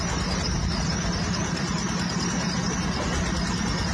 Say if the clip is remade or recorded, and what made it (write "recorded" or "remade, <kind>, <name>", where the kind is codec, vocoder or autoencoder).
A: recorded